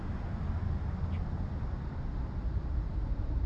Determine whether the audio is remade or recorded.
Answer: recorded